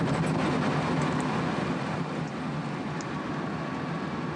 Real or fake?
real